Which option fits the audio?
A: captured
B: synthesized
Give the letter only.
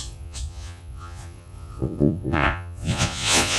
B